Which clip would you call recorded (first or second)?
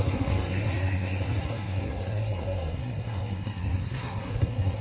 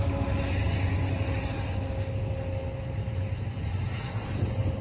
second